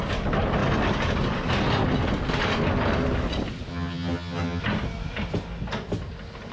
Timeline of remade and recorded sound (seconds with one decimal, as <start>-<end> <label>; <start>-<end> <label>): 0.0-3.7 recorded; 3.7-4.6 remade; 4.6-6.5 recorded